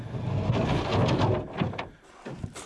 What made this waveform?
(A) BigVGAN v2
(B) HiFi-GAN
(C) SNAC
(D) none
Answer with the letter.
D